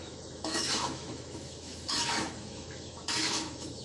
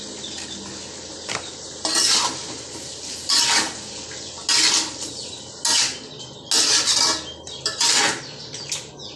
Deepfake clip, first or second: first